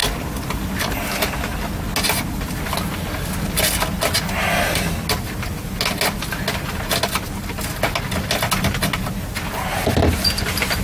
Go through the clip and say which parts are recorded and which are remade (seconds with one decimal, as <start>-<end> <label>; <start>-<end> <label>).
0.0-10.8 recorded